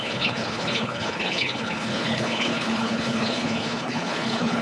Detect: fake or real fake